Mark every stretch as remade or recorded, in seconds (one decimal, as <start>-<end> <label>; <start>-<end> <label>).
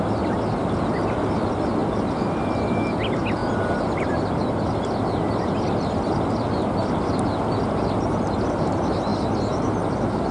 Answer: 0.0-9.1 remade; 9.1-9.8 recorded; 9.8-10.3 remade